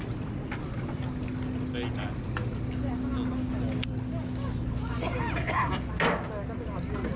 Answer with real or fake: real